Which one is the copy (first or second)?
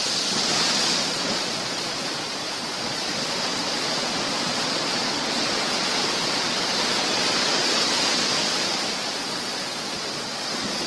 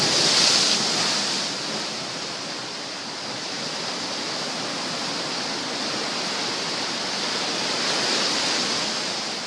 first